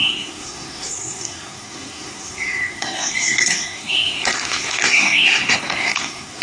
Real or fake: fake